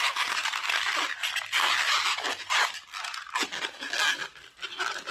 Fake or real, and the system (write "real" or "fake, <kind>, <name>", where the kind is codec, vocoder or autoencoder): real